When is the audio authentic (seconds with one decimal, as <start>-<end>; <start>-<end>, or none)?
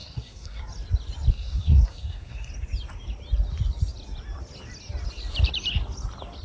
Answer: 0.6-1.3; 2.5-6.4